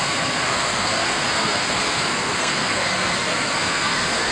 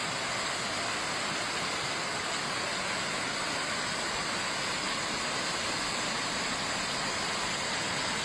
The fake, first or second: first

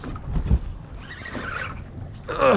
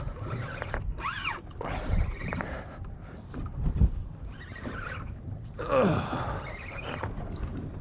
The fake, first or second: second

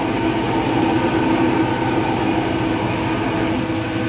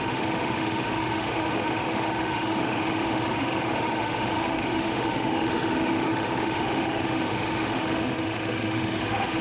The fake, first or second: second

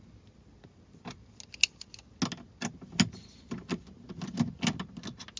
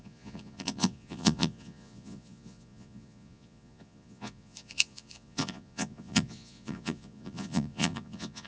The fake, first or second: second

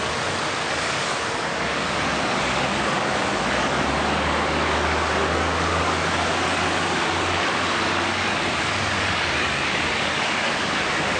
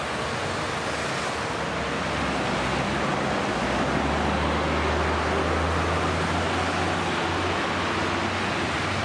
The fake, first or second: first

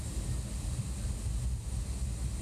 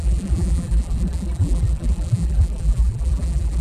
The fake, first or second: second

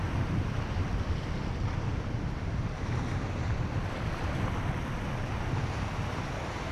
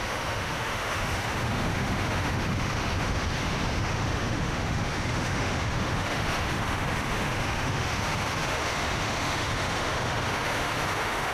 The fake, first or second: second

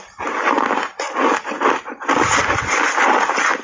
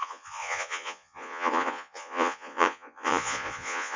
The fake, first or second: second